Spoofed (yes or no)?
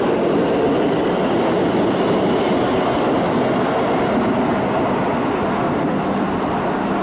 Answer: no